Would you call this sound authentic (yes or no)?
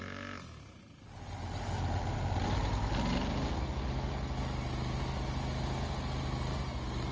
yes